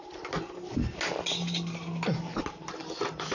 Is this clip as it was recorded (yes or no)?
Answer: yes